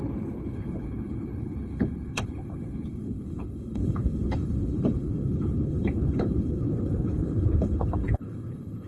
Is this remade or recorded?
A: remade